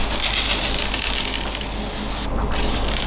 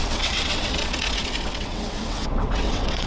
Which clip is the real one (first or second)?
first